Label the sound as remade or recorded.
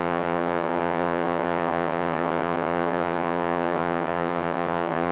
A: remade